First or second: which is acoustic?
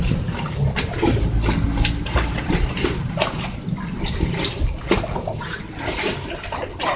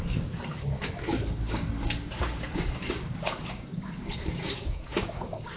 first